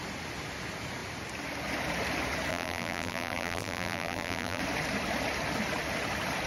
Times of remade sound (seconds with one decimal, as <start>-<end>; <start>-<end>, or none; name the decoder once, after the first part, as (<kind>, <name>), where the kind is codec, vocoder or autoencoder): 2.5-4.6 (vocoder, BigVGAN v2)